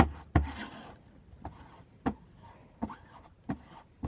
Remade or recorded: recorded